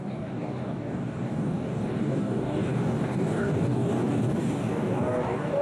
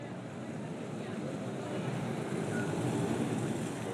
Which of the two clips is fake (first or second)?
first